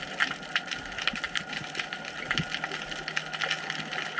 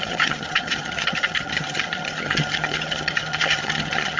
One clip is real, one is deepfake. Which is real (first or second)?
first